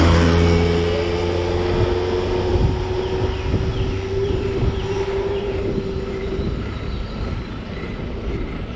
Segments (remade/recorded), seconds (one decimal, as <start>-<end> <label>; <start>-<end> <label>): 0.0-2.5 recorded; 2.5-3.0 remade; 3.0-4.2 recorded; 4.2-8.0 remade; 8.0-8.8 recorded